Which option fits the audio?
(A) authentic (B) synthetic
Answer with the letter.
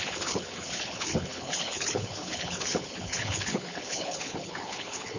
B